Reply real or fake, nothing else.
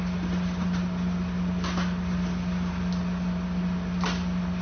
real